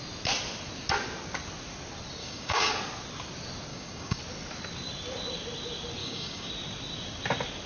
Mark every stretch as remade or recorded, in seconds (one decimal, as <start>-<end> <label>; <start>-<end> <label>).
0.0-2.2 recorded; 2.2-2.7 remade; 2.7-3.7 recorded; 3.7-4.2 remade; 4.2-6.0 recorded; 6.0-6.5 remade; 6.5-7.7 recorded